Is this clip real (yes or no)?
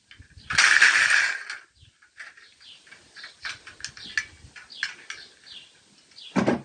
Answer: yes